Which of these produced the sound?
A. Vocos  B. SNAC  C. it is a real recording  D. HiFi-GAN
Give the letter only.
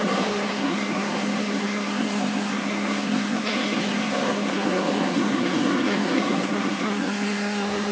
B